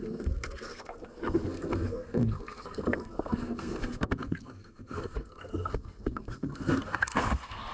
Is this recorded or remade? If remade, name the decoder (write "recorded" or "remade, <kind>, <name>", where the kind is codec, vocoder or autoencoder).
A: remade, codec, SNAC